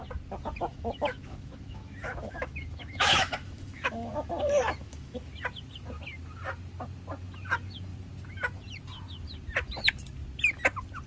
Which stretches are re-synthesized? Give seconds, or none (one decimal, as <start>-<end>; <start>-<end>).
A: 0.7-5.3